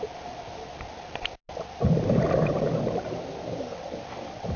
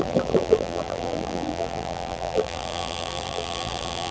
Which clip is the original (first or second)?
first